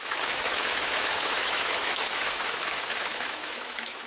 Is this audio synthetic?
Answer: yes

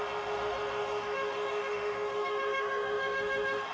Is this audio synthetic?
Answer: yes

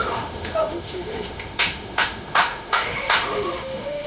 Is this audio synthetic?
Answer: yes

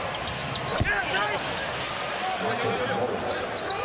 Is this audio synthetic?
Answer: no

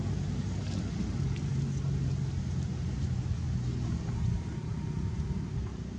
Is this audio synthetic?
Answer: no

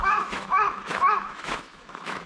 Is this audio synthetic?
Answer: yes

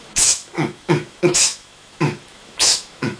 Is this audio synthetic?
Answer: yes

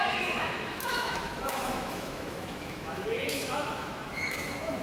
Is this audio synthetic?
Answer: yes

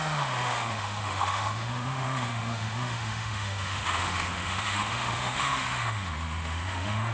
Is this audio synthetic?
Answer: yes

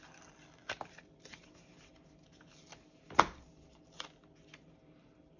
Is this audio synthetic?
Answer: no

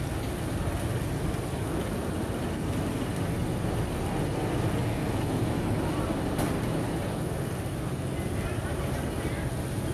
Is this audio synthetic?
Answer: no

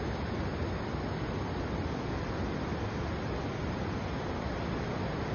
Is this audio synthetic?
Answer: no